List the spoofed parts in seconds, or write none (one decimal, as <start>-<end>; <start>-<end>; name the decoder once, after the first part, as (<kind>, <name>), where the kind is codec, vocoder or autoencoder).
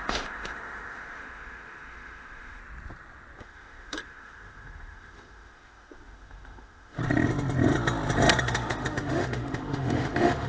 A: 0.0-2.6 (autoencoder, DAC-VAE); 3.4-7.0; 8.4-10.5